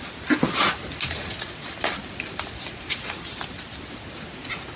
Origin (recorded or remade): recorded